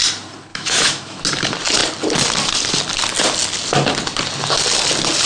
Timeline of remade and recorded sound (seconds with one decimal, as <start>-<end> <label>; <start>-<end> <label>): 0.0-0.5 recorded; 0.5-1.2 remade; 1.2-5.3 recorded